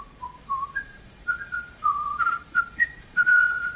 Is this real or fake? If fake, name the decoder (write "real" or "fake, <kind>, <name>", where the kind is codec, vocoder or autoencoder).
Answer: fake, vocoder, Vocos